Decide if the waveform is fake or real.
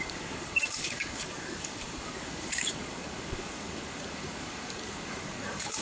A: fake